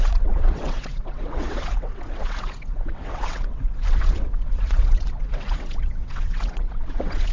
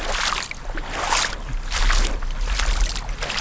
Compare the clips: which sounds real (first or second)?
second